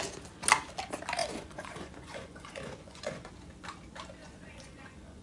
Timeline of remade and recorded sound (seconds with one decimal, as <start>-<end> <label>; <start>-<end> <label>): 0.0-1.2 recorded; 1.2-3.3 remade; 3.3-4.2 recorded; 4.2-5.2 remade